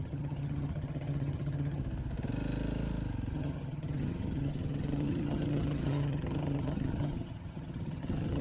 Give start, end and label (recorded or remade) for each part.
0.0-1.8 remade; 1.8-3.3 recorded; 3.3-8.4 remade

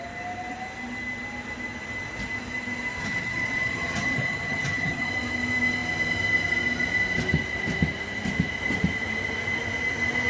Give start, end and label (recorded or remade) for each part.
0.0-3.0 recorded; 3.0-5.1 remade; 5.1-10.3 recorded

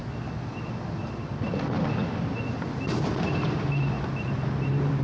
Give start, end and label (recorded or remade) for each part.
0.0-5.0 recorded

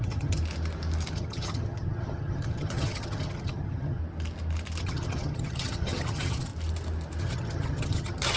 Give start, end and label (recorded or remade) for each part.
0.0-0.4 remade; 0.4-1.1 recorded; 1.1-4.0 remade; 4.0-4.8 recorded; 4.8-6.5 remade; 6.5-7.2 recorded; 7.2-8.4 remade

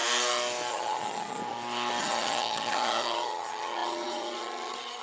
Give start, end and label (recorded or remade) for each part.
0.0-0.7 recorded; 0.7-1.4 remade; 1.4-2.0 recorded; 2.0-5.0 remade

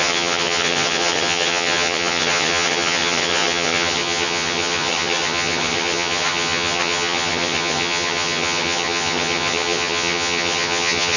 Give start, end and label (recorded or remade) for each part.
0.0-11.2 remade